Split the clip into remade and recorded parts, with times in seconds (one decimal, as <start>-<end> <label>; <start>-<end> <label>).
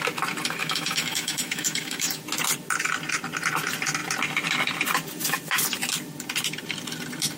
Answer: 0.0-0.6 recorded; 0.6-2.2 remade; 2.2-7.4 recorded